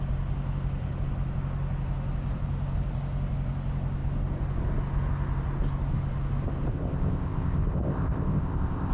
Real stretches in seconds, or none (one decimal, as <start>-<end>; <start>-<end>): 0.0-6.7